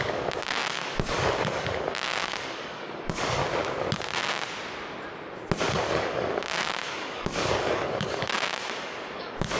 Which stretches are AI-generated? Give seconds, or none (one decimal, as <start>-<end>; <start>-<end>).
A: 0.0-3.4; 5.6-9.6